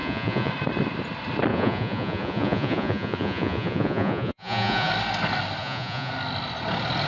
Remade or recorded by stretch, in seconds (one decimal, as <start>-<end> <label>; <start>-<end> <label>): 0.0-0.5 remade; 0.5-1.5 recorded; 1.5-4.9 remade; 4.9-5.6 recorded; 5.6-6.1 remade; 6.1-7.1 recorded